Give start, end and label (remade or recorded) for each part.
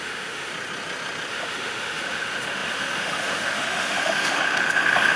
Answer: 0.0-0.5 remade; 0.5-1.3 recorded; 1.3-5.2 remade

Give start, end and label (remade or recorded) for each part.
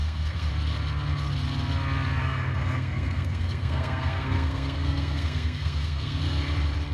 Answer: 0.0-0.5 remade; 0.5-2.2 recorded; 2.2-6.2 remade; 6.2-6.9 recorded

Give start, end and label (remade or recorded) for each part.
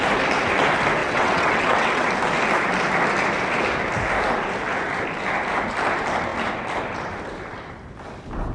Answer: 0.0-1.0 recorded; 1.0-2.1 remade; 2.1-8.5 recorded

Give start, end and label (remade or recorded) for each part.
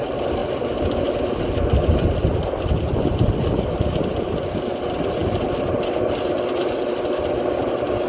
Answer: 0.0-8.1 recorded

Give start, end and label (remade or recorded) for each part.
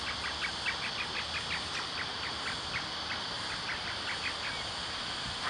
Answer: 0.0-5.5 recorded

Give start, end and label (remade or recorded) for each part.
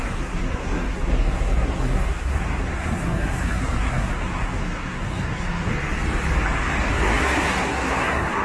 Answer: 0.0-5.7 remade; 5.7-6.9 recorded; 6.9-8.4 remade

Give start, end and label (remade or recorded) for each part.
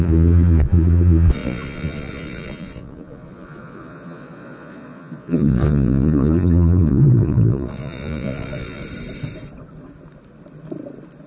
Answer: 0.0-8.8 remade; 8.8-11.3 recorded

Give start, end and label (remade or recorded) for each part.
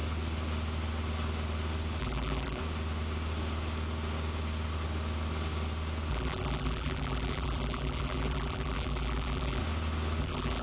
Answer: 0.0-2.0 recorded; 2.0-2.6 remade; 2.6-6.1 recorded; 6.1-9.6 remade; 9.6-10.2 recorded; 10.2-10.6 remade